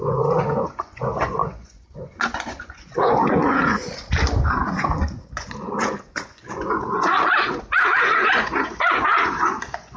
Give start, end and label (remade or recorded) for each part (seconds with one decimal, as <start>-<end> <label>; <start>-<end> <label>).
0.0-3.8 remade; 3.8-4.4 recorded; 4.4-10.0 remade